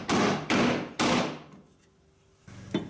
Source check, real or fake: real